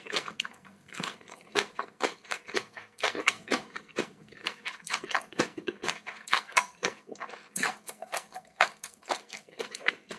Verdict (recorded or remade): remade